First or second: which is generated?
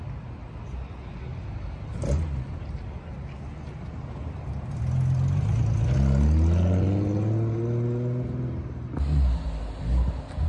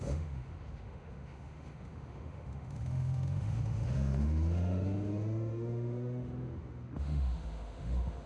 second